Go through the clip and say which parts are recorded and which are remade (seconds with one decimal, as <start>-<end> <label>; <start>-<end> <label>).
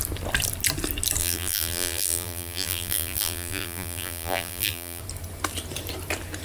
0.0-1.2 recorded; 1.2-5.0 remade; 5.0-6.4 recorded